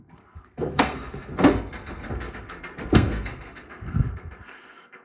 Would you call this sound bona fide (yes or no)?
no